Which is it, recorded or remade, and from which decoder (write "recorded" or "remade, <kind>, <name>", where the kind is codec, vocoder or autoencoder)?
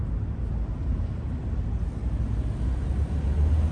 recorded